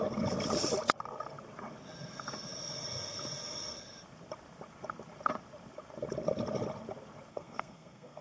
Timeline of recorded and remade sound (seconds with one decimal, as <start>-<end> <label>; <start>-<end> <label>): 0.0-7.3 recorded; 7.3-8.2 remade